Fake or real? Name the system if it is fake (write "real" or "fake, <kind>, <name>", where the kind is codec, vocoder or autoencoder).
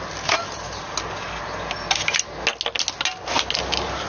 real